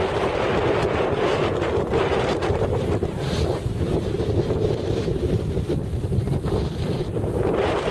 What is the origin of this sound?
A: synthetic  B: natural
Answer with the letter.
B